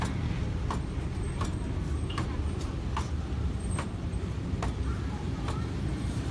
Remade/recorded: remade